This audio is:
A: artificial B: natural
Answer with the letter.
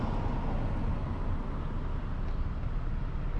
B